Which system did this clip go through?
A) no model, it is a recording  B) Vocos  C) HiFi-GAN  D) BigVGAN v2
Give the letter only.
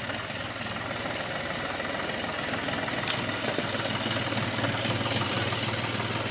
A